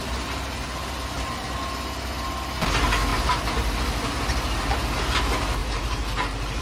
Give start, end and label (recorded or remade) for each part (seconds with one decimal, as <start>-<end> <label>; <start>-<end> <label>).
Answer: 0.0-3.1 recorded; 3.1-3.7 remade; 3.7-5.6 recorded; 5.6-6.6 remade